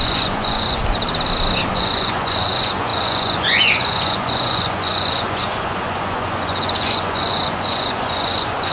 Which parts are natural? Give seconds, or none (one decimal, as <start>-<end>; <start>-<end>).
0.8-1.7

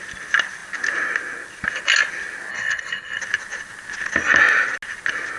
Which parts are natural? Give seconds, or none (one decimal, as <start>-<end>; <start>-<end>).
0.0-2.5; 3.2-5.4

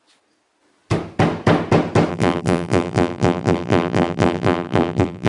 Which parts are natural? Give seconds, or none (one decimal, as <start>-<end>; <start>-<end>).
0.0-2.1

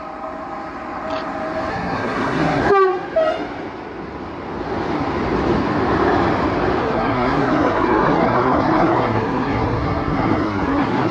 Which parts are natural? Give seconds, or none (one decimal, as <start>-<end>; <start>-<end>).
0.0-1.7; 2.6-6.8